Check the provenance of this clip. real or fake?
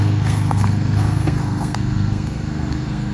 fake